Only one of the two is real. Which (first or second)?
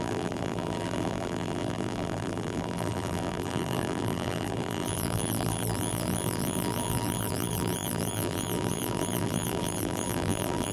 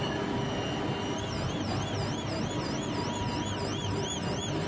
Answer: second